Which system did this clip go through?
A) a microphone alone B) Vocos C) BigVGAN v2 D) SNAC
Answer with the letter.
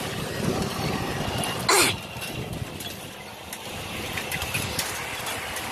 A